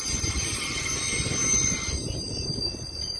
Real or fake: real